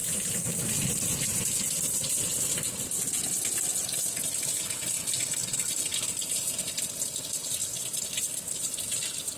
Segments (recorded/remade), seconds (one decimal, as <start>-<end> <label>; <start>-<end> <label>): 0.0-1.6 remade; 1.6-9.4 recorded